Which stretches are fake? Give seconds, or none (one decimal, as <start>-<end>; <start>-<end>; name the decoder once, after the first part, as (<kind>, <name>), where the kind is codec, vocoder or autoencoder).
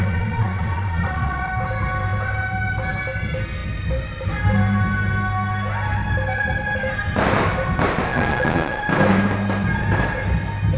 0.0-1.5 (vocoder, Vocos); 8.1-8.8